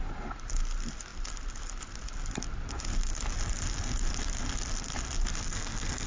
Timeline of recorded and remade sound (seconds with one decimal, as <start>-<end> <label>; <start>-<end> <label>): 0.0-5.5 recorded; 5.5-6.1 remade